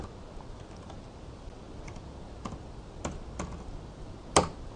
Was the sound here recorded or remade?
recorded